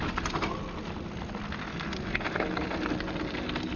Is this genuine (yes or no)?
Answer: yes